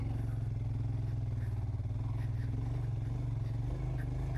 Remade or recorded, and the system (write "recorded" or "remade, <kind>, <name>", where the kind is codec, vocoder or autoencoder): recorded